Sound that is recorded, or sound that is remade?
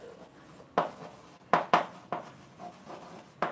recorded